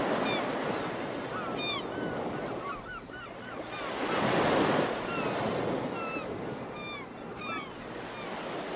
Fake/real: real